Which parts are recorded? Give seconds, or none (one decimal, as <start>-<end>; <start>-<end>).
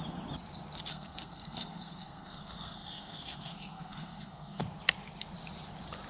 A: 0.0-0.9; 4.6-6.1